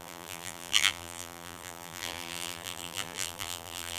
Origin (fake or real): fake